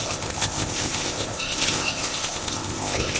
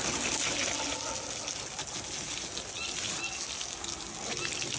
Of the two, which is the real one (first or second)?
second